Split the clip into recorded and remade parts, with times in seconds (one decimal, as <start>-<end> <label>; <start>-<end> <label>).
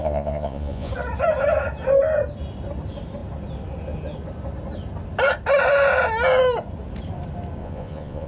0.0-0.9 remade; 0.9-7.6 recorded; 7.6-8.3 remade